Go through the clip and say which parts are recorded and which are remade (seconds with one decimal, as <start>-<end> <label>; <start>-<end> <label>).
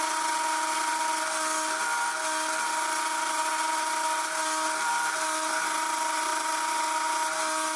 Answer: 0.0-7.8 recorded